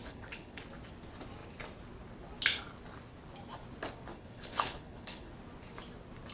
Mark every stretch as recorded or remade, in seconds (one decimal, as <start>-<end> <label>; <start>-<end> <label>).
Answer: 0.0-0.6 remade; 0.6-4.1 recorded; 4.1-5.3 remade; 5.3-6.3 recorded